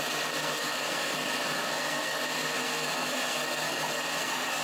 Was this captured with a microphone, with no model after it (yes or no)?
no